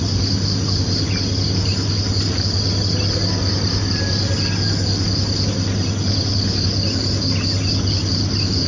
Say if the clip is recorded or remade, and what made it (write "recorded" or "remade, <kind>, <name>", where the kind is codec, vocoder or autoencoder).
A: recorded